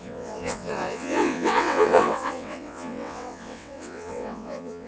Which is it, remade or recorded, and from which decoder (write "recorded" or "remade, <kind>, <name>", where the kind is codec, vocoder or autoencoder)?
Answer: remade, vocoder, WaveNeXt